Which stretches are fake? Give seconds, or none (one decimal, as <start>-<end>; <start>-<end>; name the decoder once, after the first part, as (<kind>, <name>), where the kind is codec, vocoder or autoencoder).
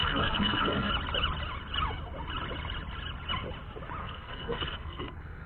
0.0-0.9 (codec, SNAC); 4.0-5.5